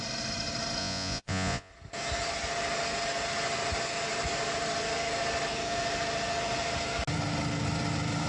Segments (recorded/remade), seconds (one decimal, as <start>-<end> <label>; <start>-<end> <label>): 0.0-0.8 recorded; 0.8-1.7 remade; 1.7-8.3 recorded